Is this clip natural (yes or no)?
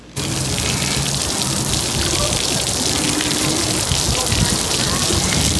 yes